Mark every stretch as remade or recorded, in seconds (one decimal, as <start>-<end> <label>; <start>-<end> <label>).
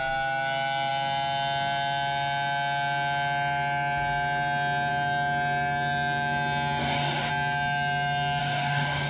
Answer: 0.0-6.8 recorded; 6.8-7.3 remade; 7.3-8.4 recorded; 8.4-9.1 remade